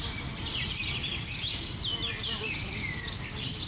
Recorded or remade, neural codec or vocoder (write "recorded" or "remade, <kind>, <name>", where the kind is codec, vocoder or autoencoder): recorded